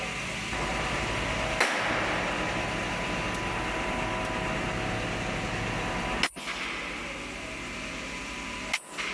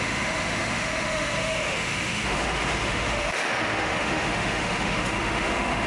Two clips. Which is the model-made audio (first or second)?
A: second